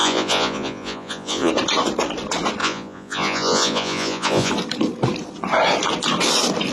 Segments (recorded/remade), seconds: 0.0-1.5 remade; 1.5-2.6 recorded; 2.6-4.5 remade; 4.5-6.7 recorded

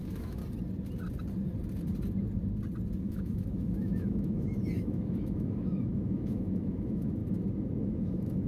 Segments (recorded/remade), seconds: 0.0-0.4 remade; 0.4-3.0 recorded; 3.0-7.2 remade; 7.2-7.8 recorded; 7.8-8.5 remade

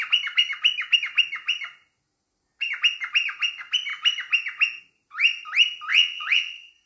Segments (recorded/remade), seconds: 0.0-5.9 recorded; 5.9-6.9 remade

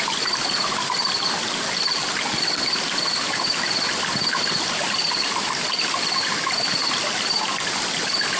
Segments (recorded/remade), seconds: 0.0-8.4 recorded

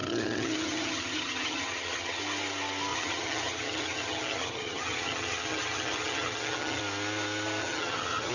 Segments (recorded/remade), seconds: 0.0-2.2 remade; 2.2-2.9 recorded; 2.9-6.8 remade; 6.8-7.6 recorded; 7.6-8.3 remade

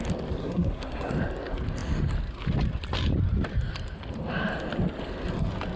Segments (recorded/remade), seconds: 0.0-0.4 recorded; 0.4-1.1 remade; 1.1-5.8 recorded

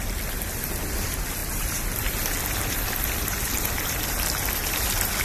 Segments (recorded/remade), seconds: 0.0-5.2 recorded